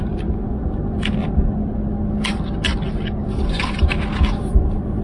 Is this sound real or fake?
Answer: real